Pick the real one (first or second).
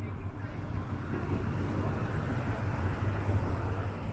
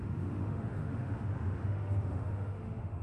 first